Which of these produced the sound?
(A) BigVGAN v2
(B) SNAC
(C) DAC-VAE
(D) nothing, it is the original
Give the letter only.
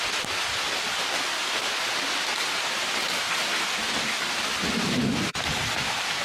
D